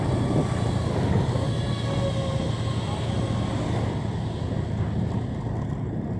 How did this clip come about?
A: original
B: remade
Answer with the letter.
A